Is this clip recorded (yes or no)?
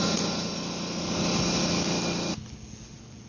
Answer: yes